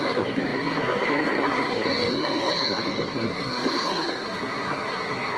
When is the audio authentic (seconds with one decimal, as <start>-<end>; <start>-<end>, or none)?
none